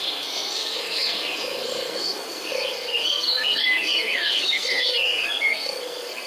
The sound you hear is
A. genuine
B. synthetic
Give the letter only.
B